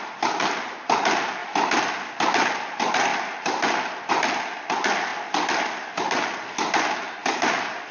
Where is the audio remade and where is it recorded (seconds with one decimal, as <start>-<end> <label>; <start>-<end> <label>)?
0.0-7.9 recorded